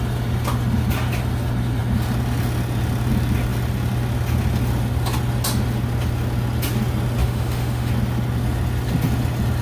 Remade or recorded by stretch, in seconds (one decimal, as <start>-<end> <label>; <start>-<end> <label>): 0.0-7.2 recorded; 7.2-7.9 remade; 7.9-9.6 recorded

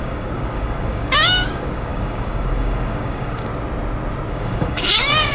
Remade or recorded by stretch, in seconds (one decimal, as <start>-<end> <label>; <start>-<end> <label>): 0.0-3.5 remade; 3.5-4.3 recorded; 4.3-5.3 remade

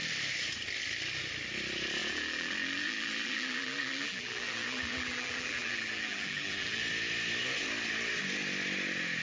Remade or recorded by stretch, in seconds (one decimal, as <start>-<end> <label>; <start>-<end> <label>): 0.0-2.0 recorded; 2.0-6.8 remade; 6.8-9.2 recorded

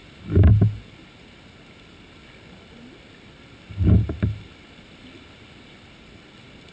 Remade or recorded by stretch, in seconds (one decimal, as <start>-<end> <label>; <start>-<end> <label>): 0.0-6.7 recorded